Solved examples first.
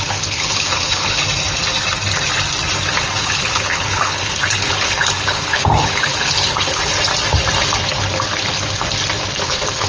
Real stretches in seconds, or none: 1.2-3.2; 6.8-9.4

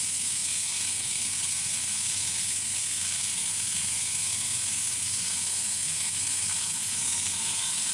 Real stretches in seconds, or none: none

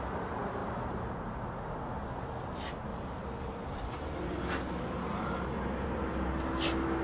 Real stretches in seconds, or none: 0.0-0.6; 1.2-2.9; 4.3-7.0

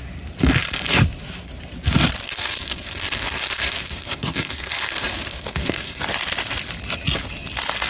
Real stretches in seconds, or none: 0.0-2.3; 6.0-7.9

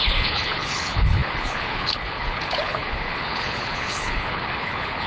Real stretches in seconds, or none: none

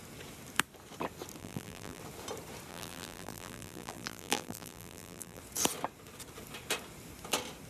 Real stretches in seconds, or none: 0.0-1.4; 2.0-2.7; 5.4-7.7

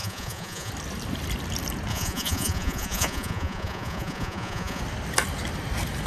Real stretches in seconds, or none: 0.7-1.9; 4.8-6.1